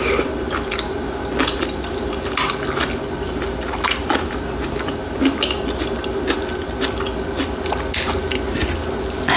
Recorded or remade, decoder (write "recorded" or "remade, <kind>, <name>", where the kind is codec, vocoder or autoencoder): recorded